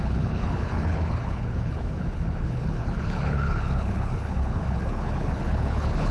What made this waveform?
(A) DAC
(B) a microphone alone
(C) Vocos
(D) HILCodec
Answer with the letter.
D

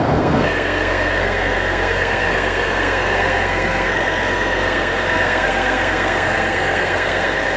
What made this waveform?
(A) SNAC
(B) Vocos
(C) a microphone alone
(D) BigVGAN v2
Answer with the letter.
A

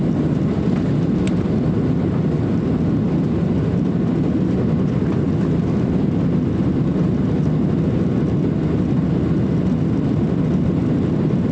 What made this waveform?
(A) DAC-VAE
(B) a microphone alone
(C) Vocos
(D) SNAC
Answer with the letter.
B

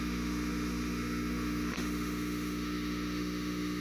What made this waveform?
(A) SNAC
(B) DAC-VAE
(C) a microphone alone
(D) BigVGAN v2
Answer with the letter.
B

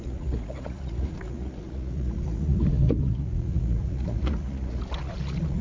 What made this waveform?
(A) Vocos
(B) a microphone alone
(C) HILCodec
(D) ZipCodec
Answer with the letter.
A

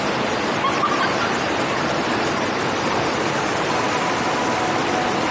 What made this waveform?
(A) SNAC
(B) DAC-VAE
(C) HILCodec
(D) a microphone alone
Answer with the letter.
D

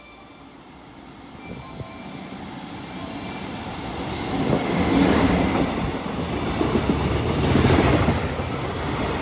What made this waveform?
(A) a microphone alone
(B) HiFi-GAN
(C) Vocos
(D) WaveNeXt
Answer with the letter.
A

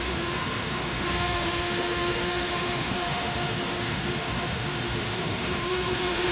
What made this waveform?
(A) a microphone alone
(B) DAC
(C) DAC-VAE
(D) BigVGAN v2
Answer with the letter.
C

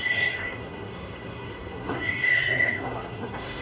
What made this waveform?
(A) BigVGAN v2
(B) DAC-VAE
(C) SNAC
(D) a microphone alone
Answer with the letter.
C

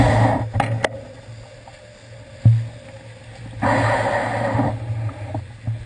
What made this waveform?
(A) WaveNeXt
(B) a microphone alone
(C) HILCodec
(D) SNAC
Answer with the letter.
B